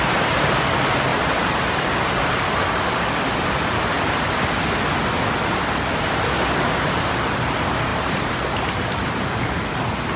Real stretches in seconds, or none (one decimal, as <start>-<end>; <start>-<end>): 0.0-1.1; 1.7-7.9; 9.1-10.2